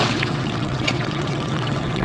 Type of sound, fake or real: fake